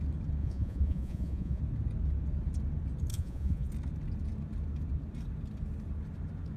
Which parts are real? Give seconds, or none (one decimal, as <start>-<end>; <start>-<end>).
0.0-0.4; 1.6-3.1; 3.7-6.6